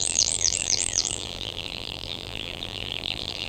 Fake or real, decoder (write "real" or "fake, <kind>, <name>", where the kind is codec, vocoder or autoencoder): fake, vocoder, BigVGAN v2